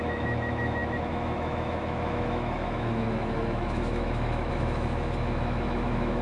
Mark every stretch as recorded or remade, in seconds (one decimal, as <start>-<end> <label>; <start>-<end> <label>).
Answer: 0.0-6.2 remade